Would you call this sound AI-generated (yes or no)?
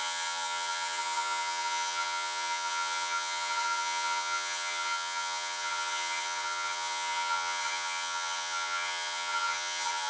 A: yes